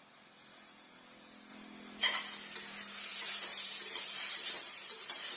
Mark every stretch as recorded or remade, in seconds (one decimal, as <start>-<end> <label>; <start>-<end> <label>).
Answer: 0.0-3.1 recorded; 3.1-5.4 remade